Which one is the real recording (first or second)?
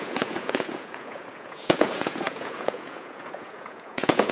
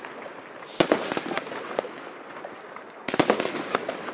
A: second